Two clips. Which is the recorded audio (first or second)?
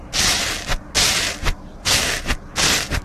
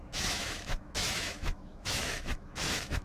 first